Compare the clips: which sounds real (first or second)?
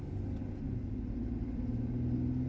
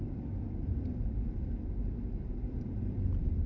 first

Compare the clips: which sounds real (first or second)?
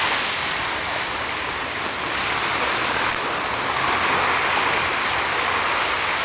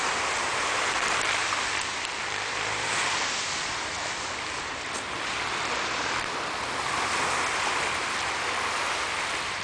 first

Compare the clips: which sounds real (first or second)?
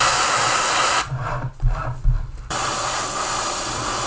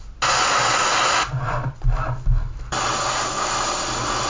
second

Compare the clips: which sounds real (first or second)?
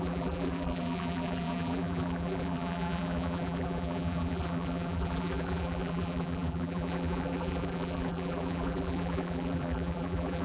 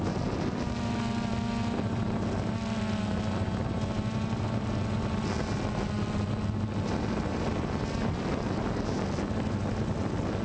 second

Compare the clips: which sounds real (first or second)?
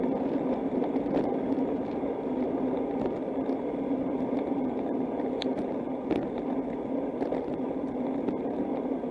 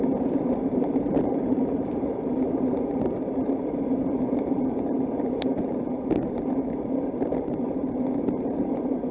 first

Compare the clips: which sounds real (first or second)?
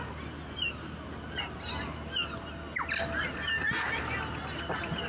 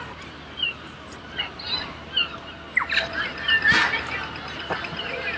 first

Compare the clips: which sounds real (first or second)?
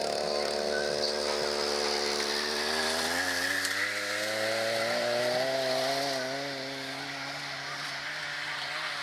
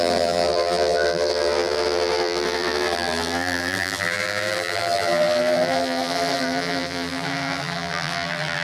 first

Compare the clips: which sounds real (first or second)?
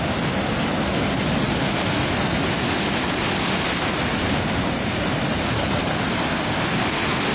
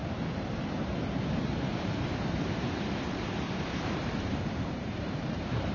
first